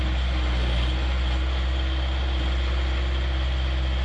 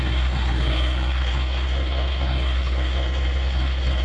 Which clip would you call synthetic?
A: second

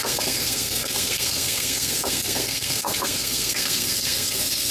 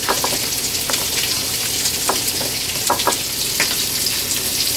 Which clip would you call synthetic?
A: first